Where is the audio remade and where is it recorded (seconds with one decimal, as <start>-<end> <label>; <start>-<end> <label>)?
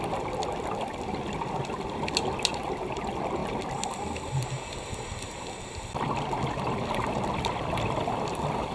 0.0-8.7 recorded